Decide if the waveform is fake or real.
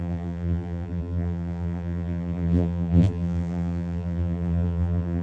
fake